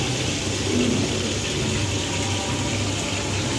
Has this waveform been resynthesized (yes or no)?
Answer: no